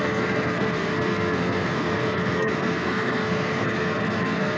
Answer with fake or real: fake